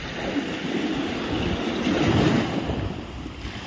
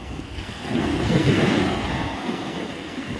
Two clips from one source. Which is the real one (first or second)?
first